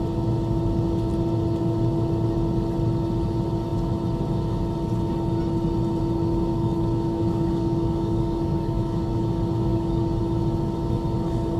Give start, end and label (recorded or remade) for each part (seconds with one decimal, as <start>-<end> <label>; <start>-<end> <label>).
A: 0.0-6.5 recorded; 6.5-9.2 remade; 9.2-9.7 recorded; 9.7-10.2 remade; 10.2-11.6 recorded